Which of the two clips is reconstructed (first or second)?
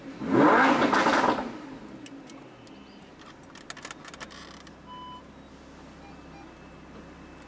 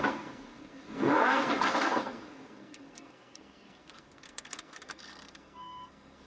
second